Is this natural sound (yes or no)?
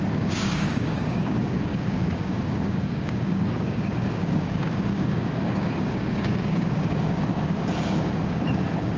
no